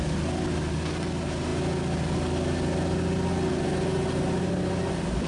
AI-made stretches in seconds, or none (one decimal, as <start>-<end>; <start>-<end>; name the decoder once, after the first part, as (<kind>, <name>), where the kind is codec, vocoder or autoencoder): none